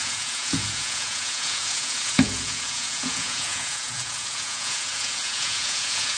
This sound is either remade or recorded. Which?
remade